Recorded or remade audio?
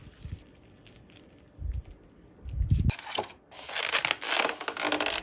recorded